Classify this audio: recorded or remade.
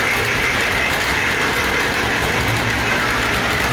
recorded